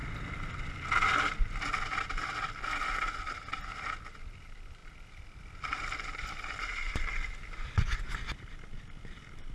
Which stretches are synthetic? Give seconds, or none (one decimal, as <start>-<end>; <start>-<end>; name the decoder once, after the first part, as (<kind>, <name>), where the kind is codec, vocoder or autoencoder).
4.8-8.1 (vocoder, BigVGAN v2)